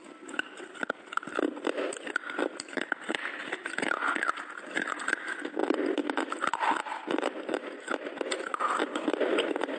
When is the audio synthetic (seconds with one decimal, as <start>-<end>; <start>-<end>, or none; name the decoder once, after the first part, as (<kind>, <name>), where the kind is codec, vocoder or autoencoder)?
none